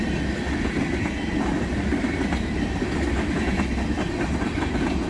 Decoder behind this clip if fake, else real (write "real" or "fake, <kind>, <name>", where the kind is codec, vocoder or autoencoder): real